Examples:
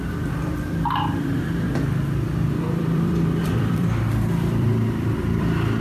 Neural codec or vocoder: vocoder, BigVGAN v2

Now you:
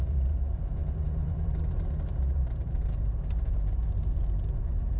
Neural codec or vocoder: vocoder, BigVGAN v2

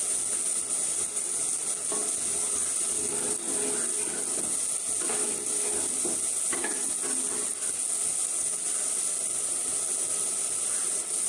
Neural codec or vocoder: none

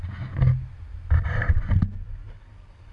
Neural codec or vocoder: none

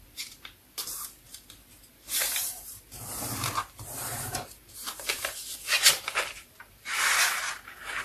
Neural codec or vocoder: vocoder, BigVGAN v2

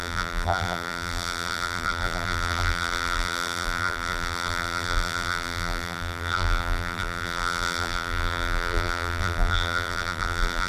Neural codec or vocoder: vocoder, BigVGAN v2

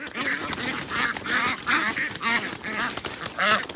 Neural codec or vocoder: none